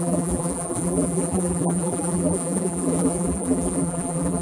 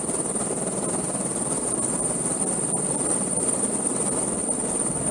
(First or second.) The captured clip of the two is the second